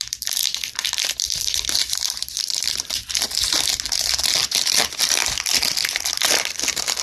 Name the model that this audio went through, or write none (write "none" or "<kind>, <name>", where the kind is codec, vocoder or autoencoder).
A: vocoder, BigVGAN v2